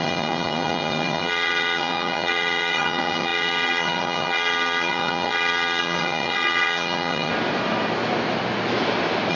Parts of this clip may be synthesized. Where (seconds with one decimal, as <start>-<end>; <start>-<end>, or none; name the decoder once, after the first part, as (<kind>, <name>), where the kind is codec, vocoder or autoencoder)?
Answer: 0.0-7.3 (vocoder, HiFi-GAN)